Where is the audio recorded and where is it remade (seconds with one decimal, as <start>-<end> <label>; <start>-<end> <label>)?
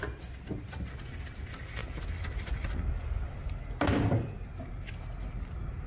0.0-5.9 recorded